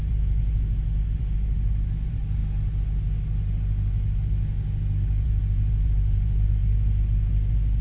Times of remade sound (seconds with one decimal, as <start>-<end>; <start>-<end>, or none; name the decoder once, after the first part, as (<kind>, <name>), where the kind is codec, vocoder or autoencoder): 0.0-2.4 (vocoder, BigVGAN v2); 5.0-6.6